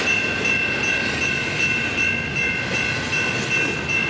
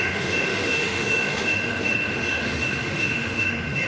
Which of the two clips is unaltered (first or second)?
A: first